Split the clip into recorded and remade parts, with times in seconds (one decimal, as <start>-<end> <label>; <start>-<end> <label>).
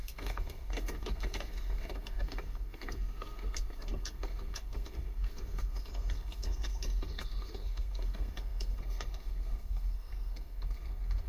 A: 0.0-11.3 remade